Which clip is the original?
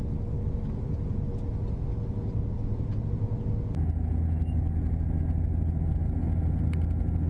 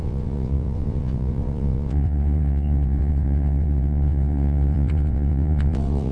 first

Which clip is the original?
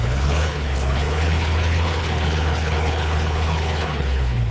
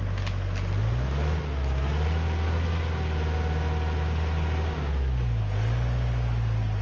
second